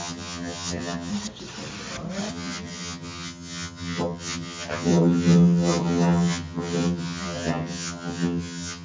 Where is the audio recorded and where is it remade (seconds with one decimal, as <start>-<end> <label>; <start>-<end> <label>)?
0.0-1.1 remade; 1.1-2.3 recorded; 2.3-8.8 remade